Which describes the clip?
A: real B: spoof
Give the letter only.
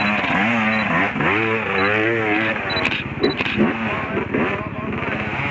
A